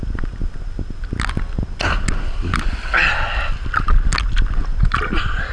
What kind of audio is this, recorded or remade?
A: recorded